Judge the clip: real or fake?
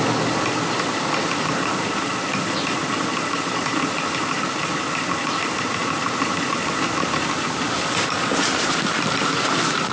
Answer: real